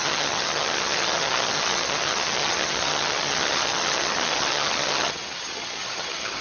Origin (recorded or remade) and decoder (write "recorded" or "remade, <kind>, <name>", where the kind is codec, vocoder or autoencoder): remade, vocoder, HiFi-GAN